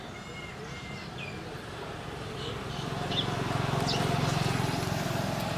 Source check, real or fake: real